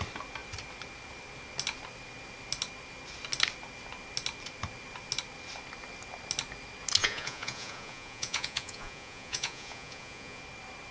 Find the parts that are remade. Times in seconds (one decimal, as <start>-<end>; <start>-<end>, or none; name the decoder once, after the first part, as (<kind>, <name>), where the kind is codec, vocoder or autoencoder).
7.0-10.4 (vocoder, Vocos)